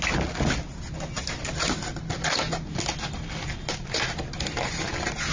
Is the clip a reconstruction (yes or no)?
no